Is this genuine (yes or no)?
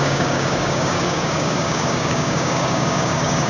no